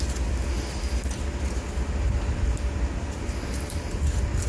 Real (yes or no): yes